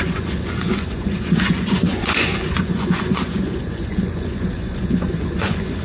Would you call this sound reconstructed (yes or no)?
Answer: yes